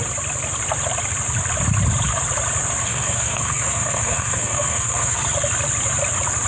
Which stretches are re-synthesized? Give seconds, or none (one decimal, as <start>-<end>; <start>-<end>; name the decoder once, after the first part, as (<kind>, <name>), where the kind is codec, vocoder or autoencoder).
2.8-5.2 (codec, SNAC)